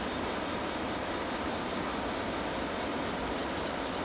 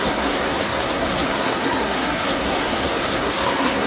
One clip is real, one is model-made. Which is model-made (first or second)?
second